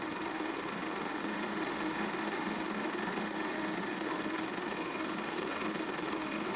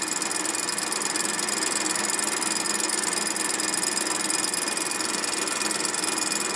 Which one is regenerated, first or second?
first